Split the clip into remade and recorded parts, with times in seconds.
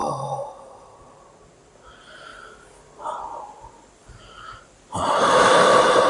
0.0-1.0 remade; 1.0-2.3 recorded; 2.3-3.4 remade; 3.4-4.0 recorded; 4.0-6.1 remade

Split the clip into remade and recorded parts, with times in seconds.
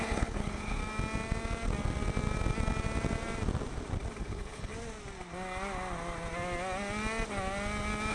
0.0-0.8 remade; 0.8-4.2 recorded; 4.2-4.7 remade; 4.7-8.1 recorded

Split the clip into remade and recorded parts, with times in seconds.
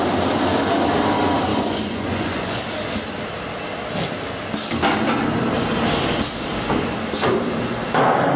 0.0-1.5 recorded; 1.5-2.6 remade; 2.6-8.4 recorded